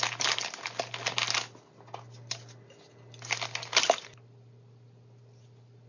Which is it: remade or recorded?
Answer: recorded